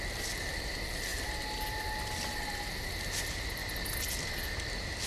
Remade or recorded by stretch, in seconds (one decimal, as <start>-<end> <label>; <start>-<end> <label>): 0.0-5.1 recorded